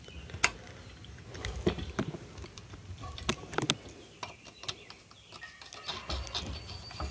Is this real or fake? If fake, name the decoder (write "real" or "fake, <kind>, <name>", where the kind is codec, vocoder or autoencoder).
real